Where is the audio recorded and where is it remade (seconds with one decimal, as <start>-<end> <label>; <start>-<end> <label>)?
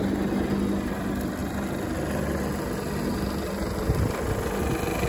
0.0-5.1 recorded